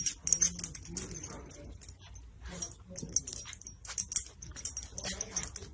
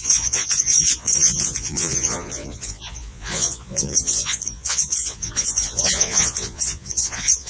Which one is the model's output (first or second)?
second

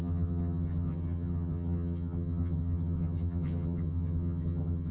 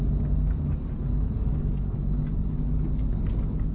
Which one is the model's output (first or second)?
first